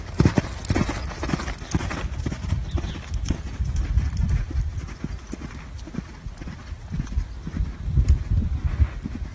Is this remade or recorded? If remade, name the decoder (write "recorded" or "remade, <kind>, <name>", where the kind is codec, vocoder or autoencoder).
recorded